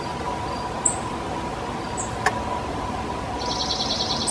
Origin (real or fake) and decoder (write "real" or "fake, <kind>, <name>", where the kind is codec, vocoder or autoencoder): real